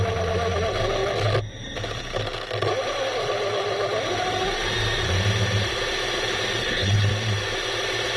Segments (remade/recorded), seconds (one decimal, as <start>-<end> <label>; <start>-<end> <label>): 0.0-6.6 recorded; 6.6-7.1 remade; 7.1-8.2 recorded